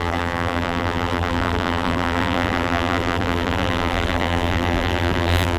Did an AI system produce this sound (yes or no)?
yes